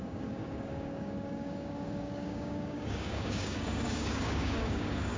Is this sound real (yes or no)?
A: no